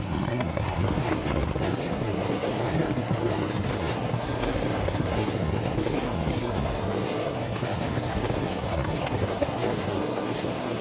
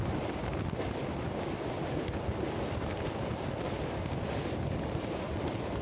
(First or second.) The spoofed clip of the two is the first